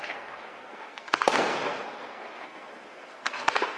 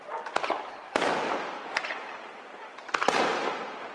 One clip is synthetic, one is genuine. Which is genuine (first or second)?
second